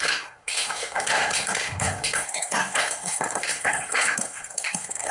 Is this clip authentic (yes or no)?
no